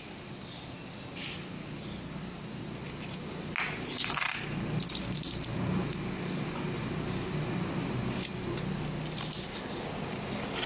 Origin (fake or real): real